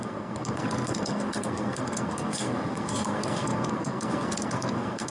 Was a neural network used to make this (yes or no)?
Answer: yes